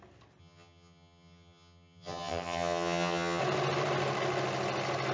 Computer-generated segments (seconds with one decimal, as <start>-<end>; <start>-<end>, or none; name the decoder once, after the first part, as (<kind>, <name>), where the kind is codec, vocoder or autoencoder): 0.4-3.4 (vocoder, HiFi-GAN)